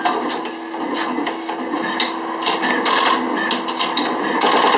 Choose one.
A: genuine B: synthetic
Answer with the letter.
A